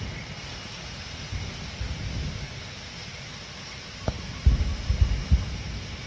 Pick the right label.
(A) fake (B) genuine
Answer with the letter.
B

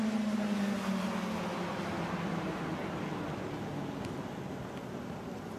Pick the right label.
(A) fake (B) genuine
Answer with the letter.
B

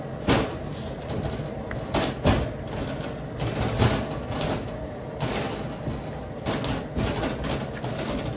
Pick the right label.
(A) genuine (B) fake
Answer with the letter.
A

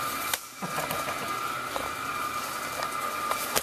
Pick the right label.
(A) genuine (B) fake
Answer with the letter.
A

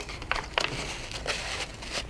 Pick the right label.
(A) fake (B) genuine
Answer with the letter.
B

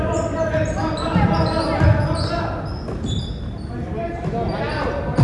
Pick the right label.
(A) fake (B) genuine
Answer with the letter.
B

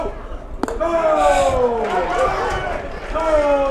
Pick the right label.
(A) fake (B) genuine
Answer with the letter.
B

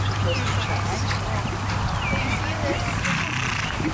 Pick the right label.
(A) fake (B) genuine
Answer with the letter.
B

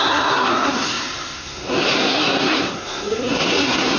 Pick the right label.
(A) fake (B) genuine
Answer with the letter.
A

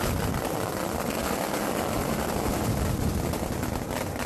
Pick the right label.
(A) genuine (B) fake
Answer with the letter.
A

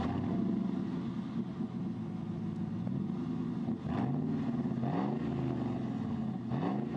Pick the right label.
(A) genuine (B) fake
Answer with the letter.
A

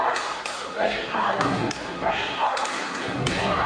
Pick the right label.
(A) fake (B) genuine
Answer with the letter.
A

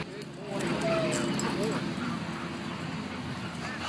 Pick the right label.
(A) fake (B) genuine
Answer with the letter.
B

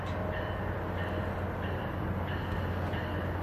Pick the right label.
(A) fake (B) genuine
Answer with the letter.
B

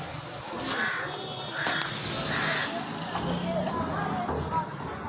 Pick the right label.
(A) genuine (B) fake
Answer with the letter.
A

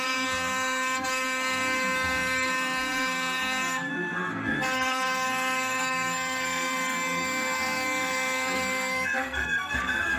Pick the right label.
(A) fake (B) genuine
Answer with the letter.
A